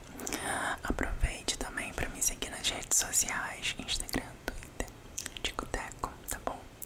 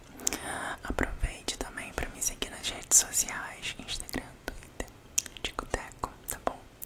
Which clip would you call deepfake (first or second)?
first